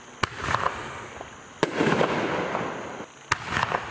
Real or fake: real